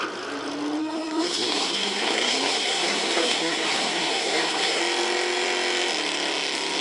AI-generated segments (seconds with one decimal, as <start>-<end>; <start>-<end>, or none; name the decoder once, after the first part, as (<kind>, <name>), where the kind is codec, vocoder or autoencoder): 0.8-4.8 (codec, SNAC)